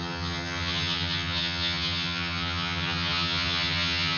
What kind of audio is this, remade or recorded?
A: remade